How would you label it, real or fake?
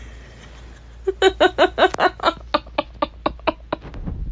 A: real